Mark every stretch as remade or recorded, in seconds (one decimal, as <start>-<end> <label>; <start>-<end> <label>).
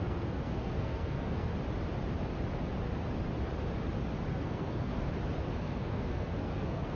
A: 0.0-1.5 remade; 1.5-4.3 recorded; 4.3-4.9 remade; 4.9-5.4 recorded; 5.4-7.0 remade